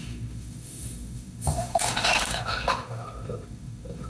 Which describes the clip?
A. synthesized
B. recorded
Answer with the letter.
A